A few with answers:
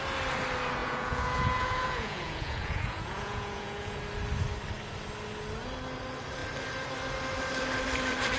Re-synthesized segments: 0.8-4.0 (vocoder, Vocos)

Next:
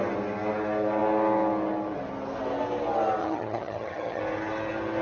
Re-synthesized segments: 3.2-4.2 (vocoder, HiFi-GAN)

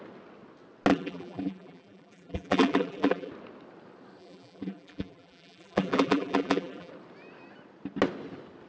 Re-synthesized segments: 0.9-3.3 (vocoder, BigVGAN v2); 4.2-6.9

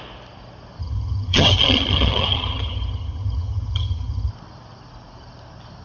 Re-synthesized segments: 0.8-4.3 (vocoder, HiFi-GAN)

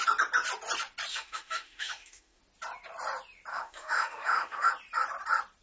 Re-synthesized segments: 1.1-2.4 (autoencoder, DAC-VAE); 3.5-4.7

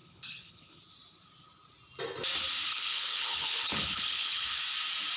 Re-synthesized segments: 0.0-0.8 (codec, HILCodec); 2.7-4.6

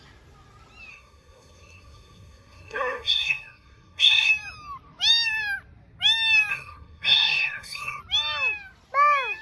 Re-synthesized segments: 0.9-4.3 (codec, SNAC); 6.5-8.0

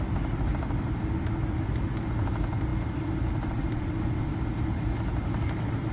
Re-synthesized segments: none